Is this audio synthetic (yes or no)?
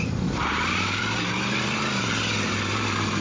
yes